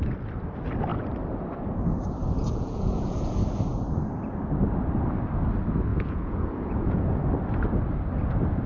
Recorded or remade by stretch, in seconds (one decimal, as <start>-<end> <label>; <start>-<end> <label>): 0.0-2.4 recorded; 2.4-3.4 remade; 3.4-5.9 recorded; 5.9-7.2 remade; 7.2-8.7 recorded